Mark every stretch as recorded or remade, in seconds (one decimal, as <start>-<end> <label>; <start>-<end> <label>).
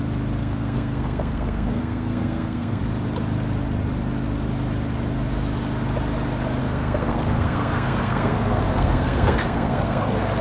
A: 0.0-0.4 recorded; 0.4-2.8 remade; 2.8-6.6 recorded; 6.6-10.4 remade